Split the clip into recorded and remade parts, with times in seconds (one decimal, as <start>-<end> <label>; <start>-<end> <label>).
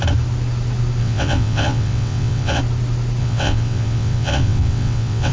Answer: 0.0-1.0 recorded; 1.0-2.6 remade; 2.6-3.2 recorded; 3.2-5.3 remade